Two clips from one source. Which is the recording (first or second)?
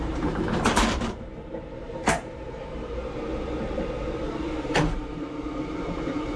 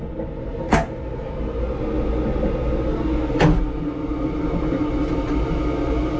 second